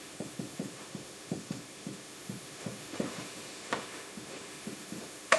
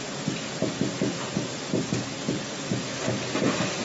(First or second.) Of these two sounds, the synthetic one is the first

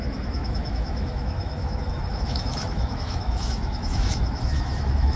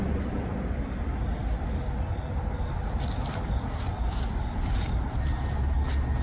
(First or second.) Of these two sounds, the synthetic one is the first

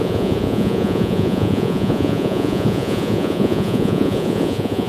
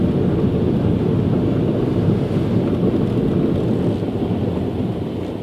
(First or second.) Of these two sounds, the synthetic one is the first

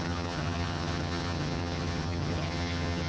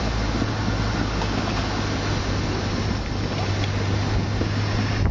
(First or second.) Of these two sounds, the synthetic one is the first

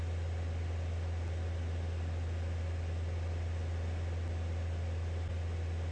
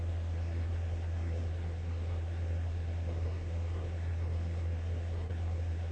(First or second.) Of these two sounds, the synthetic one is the second